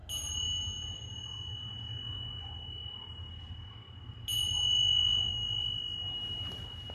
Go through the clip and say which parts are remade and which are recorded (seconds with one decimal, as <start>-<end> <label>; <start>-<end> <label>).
0.0-6.9 recorded